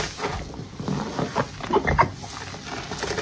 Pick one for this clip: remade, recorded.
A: recorded